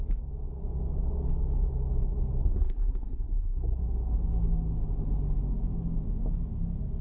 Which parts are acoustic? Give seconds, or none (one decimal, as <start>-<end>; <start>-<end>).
0.0-2.4; 3.8-7.0